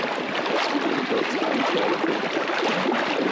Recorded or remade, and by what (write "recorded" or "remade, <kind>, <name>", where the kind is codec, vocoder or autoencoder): recorded